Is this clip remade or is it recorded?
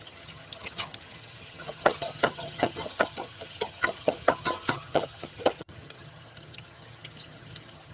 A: remade